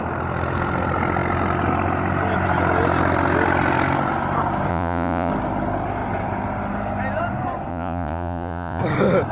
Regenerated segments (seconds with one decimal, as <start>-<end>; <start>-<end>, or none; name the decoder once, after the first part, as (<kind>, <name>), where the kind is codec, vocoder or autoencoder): 4.7-5.3 (vocoder, Vocos); 7.7-8.8